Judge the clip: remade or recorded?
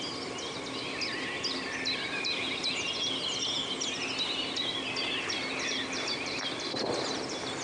recorded